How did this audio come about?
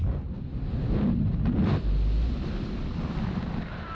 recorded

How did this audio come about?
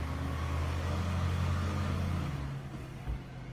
remade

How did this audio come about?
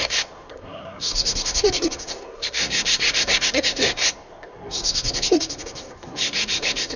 remade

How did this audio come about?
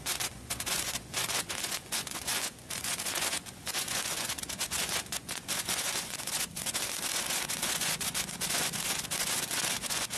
remade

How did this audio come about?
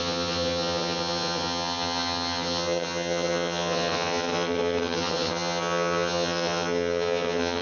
remade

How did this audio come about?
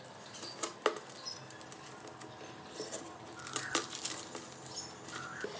recorded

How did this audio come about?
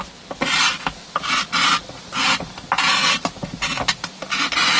recorded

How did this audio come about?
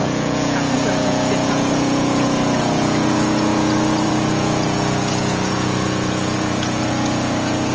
remade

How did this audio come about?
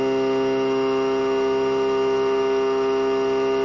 recorded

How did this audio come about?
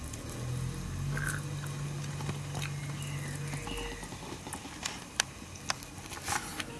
recorded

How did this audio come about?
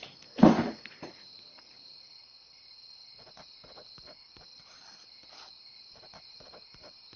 recorded